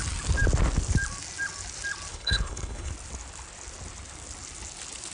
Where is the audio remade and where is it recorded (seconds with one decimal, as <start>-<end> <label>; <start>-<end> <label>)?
0.0-2.1 recorded; 2.1-2.9 remade; 2.9-5.1 recorded